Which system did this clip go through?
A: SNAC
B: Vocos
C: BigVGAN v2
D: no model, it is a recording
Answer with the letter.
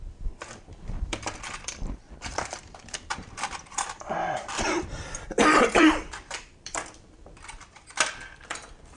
C